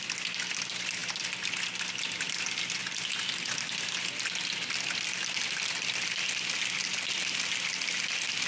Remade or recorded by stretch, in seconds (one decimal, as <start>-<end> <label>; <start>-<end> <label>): 0.0-8.5 recorded